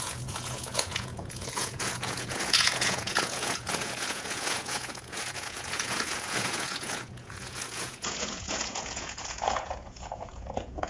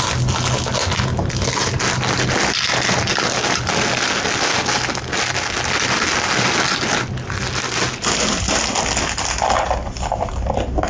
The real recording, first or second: second